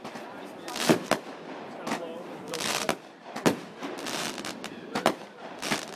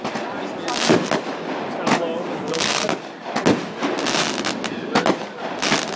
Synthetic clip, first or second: first